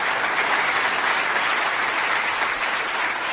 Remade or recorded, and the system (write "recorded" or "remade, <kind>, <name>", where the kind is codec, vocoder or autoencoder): recorded